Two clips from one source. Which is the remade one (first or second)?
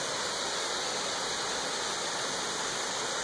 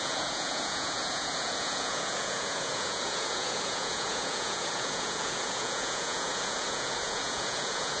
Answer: second